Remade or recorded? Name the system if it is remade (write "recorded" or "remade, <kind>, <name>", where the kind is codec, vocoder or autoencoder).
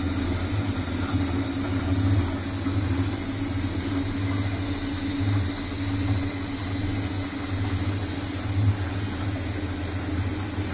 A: recorded